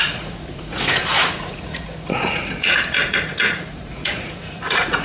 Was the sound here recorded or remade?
remade